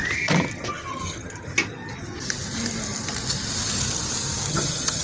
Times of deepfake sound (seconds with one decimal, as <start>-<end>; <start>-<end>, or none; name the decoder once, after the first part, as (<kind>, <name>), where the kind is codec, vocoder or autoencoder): 0.7-1.5 (vocoder, HiFi-GAN); 4.5-5.0